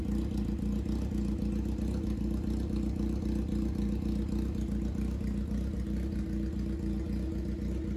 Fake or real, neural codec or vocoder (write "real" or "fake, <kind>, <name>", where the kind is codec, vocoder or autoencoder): real